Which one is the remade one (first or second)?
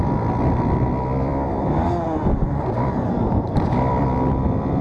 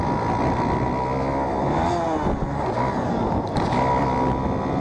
first